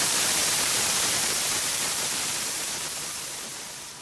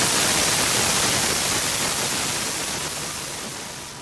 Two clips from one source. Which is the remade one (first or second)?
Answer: first